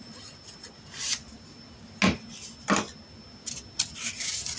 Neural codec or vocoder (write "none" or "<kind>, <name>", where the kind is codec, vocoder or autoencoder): none